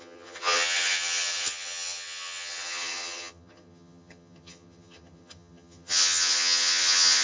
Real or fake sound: fake